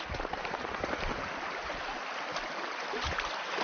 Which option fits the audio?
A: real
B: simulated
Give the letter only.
A